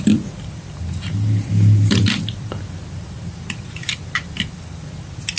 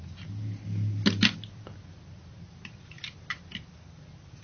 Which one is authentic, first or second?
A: second